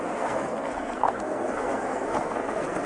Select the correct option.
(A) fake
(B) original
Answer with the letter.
A